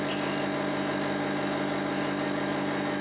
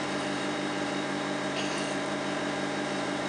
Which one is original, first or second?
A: first